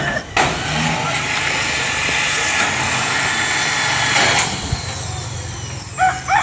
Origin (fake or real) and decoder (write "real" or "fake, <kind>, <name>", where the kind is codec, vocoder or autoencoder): real